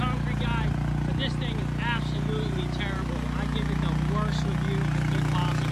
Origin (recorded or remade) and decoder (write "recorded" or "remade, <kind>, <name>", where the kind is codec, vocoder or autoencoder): recorded